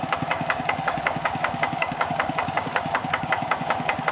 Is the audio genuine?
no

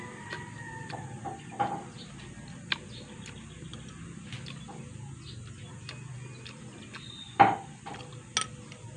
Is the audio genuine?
yes